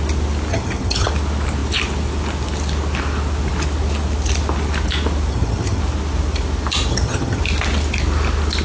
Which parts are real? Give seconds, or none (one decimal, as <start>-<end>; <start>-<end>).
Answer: 0.0-0.5; 1.1-5.3; 5.8-6.9; 7.4-8.6